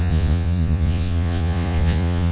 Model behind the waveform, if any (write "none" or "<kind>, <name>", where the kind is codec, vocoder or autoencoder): vocoder, Vocos